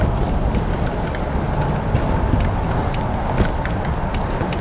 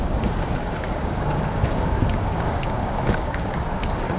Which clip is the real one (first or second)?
first